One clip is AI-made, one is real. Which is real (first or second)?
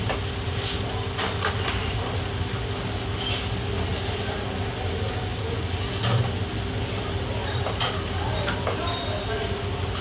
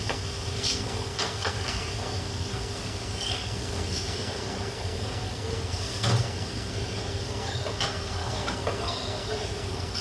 first